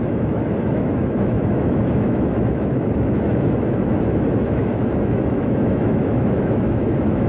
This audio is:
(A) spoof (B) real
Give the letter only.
A